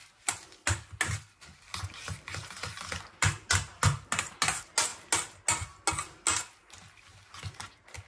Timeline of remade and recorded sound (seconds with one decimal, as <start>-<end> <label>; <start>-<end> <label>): 0.0-8.1 recorded